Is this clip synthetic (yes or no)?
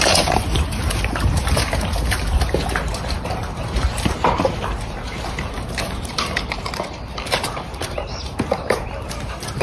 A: yes